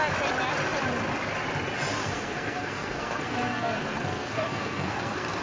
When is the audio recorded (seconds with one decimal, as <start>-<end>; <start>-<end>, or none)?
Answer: 0.0-2.0